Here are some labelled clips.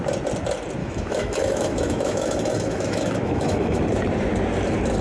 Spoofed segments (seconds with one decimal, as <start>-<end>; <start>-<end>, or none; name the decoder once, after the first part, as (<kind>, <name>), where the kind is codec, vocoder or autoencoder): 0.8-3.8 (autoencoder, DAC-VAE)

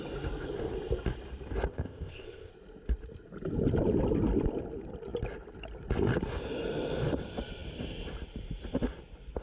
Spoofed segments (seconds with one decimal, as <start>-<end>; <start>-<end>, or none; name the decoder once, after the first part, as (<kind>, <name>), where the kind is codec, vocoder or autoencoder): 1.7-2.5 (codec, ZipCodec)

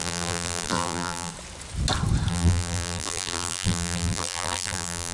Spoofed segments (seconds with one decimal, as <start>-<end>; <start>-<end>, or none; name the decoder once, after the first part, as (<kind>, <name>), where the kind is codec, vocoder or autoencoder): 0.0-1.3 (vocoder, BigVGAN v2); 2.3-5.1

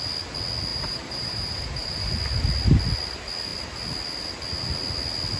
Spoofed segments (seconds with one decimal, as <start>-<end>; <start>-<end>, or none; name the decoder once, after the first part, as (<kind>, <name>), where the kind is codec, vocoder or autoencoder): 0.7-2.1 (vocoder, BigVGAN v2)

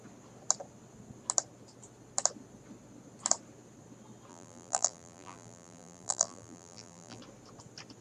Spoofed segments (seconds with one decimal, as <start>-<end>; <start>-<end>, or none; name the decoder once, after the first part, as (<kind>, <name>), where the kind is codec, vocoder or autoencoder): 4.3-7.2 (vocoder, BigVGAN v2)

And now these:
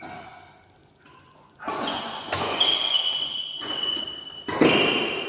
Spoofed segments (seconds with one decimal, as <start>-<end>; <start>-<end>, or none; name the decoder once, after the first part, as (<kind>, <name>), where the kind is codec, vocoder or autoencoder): 0.8-4.0 (vocoder, Vocos)